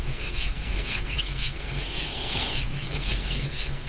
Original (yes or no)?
no